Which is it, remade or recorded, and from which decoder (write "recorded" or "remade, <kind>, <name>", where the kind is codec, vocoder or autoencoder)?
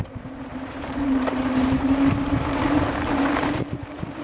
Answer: remade, vocoder, BigVGAN v2